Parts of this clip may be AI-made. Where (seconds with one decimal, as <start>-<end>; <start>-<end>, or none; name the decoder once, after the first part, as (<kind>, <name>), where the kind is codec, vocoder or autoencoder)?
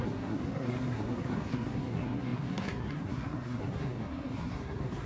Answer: 0.0-5.1 (codec, SNAC)